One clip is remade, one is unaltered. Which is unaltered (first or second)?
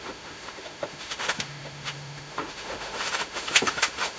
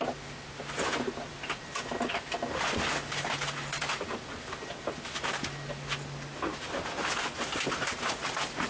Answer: second